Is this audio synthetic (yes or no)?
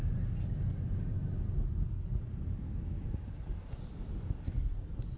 no